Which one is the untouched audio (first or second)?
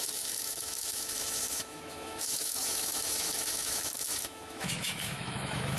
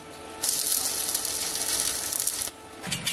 second